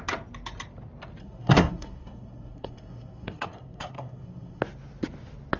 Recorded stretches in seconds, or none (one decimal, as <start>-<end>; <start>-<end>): 0.0-1.2; 4.6-5.6